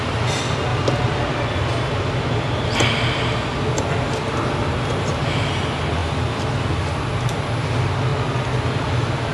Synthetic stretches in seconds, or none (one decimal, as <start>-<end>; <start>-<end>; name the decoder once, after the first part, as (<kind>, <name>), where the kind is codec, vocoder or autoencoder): 0.7-1.2 (vocoder, BigVGAN v2)